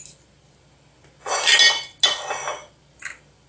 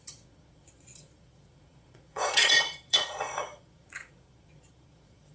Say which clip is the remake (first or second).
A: second